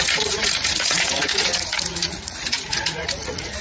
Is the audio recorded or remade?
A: remade